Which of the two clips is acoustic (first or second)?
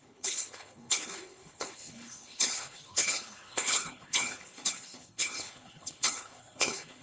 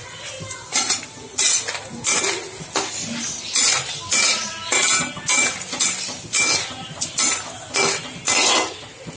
second